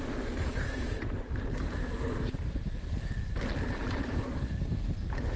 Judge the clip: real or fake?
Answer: real